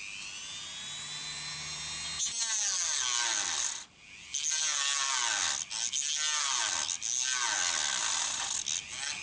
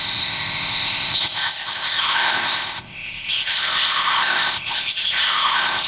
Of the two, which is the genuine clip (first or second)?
first